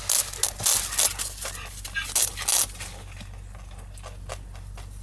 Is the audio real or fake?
real